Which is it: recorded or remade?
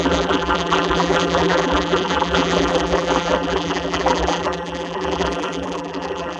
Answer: remade